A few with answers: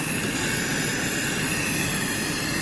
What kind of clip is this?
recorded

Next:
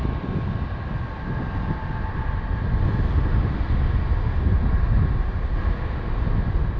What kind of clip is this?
recorded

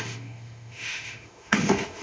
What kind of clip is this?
remade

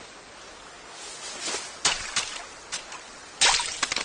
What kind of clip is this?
recorded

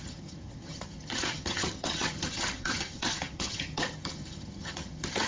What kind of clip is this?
remade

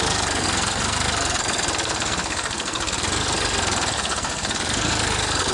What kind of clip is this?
remade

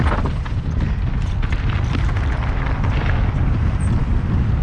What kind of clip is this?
recorded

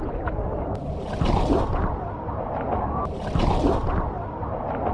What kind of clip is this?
recorded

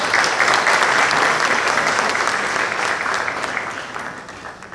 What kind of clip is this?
recorded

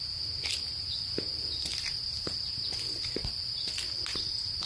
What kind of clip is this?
recorded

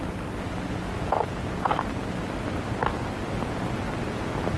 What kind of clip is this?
recorded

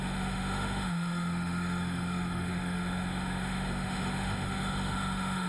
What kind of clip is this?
remade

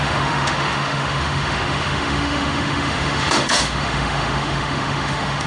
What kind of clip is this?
remade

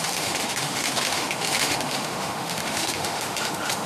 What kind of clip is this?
remade